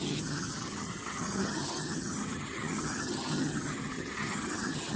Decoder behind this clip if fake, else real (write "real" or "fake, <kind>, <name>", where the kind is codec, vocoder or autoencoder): fake, vocoder, HiFi-GAN